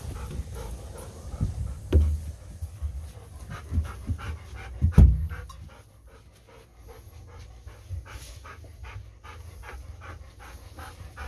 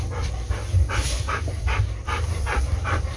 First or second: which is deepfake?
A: second